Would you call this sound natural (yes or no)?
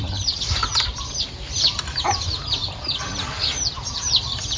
no